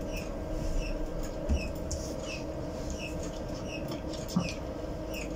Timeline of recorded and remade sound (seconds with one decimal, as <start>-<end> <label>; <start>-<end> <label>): 0.0-5.4 recorded